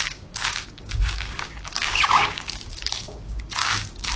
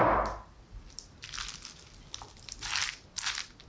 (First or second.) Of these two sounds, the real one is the second